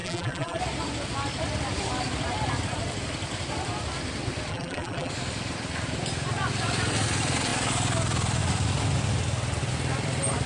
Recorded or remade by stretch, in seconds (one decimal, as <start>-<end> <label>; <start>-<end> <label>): 0.0-0.6 remade; 0.6-4.5 recorded; 4.5-5.1 remade; 5.1-10.5 recorded

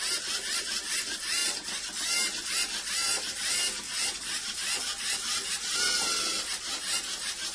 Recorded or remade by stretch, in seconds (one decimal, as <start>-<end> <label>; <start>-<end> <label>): 0.0-1.4 recorded; 1.4-2.1 remade; 2.1-7.5 recorded

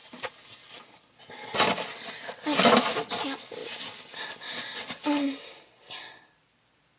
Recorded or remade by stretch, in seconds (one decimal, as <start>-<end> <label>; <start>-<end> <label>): 0.0-0.8 remade; 0.8-7.0 recorded

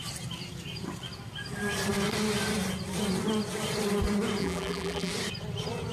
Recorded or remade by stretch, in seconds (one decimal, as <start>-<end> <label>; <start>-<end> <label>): 0.0-4.4 recorded; 4.4-5.1 remade; 5.1-5.9 recorded